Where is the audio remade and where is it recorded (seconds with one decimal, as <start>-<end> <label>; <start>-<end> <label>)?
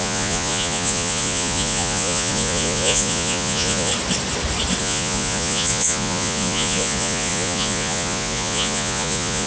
0.0-3.9 remade; 3.9-4.8 recorded; 4.8-9.5 remade